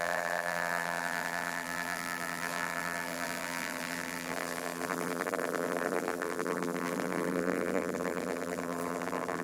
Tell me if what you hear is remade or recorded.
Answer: remade